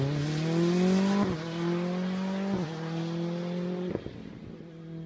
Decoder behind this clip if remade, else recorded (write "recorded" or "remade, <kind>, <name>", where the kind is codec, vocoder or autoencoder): recorded